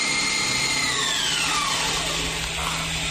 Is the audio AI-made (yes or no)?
no